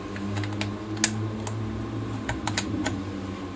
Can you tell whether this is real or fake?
real